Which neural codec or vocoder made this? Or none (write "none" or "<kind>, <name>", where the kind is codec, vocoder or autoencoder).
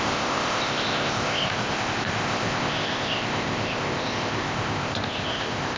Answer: codec, ZipCodec